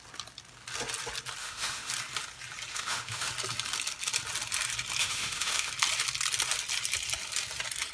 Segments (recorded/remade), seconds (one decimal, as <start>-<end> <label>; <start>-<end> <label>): 0.0-1.4 recorded; 1.4-1.9 remade; 1.9-2.7 recorded; 2.7-3.3 remade; 3.3-5.0 recorded; 5.0-5.7 remade; 5.7-7.9 recorded